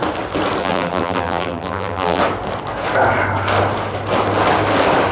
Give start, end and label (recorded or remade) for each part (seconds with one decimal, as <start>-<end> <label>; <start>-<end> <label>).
0.0-0.6 recorded; 0.6-2.2 remade; 2.2-5.1 recorded